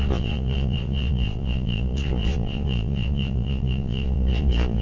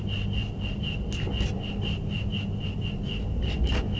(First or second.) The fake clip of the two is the first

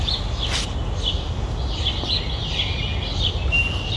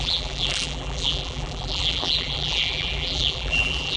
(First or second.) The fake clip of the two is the second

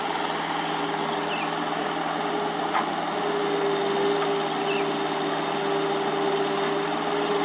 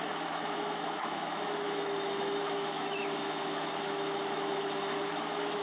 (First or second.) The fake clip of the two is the second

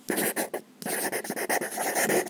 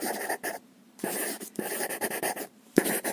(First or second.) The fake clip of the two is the second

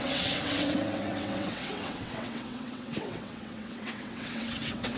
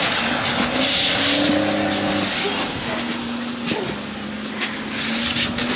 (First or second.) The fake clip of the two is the first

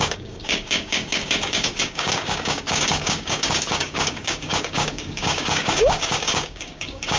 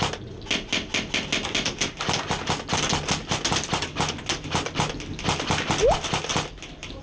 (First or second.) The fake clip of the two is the first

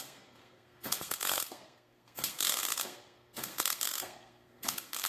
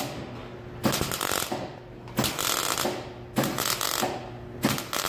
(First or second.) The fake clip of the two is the first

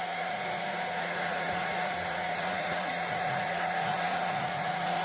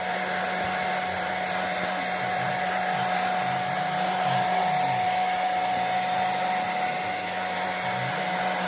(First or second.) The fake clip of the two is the first